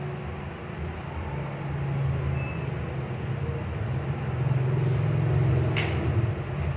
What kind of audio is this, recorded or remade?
recorded